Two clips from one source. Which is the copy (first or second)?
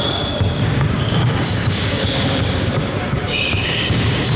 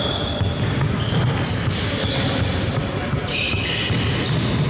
first